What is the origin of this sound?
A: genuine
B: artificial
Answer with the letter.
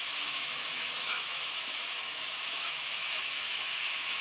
B